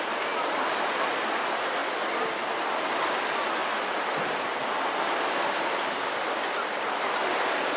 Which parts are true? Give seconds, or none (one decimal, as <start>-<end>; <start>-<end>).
0.0-7.8